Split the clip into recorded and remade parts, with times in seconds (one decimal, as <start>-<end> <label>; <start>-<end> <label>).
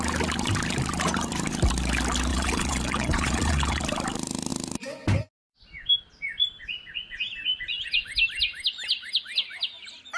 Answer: 0.0-2.3 recorded; 2.3-3.8 remade; 3.8-10.2 recorded